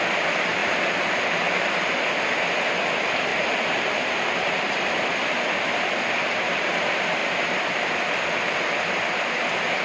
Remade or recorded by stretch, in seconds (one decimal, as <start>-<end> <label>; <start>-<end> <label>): 0.0-0.6 recorded; 0.6-2.1 remade; 2.1-3.3 recorded; 3.3-4.8 remade; 4.8-7.2 recorded; 7.2-8.6 remade; 8.6-9.8 recorded